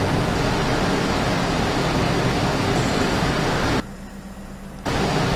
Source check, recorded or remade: recorded